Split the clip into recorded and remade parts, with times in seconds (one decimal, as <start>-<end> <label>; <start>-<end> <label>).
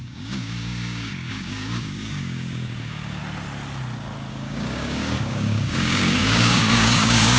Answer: 0.0-3.2 remade; 3.2-4.3 recorded; 4.3-7.4 remade